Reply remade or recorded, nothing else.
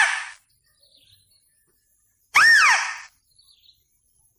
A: recorded